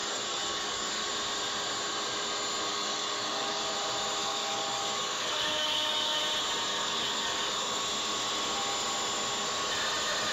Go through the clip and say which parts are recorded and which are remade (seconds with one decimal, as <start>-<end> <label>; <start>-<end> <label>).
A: 0.0-1.1 remade; 1.1-2.7 recorded; 2.7-3.6 remade; 3.6-4.2 recorded; 4.2-6.2 remade; 6.2-6.7 recorded; 6.7-7.8 remade; 7.8-10.3 recorded